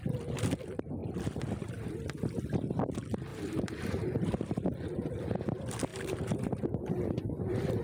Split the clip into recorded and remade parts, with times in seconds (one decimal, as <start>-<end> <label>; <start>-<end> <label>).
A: 0.0-3.3 recorded; 3.3-4.7 remade; 4.7-5.9 recorded; 5.9-6.9 remade; 6.9-7.8 recorded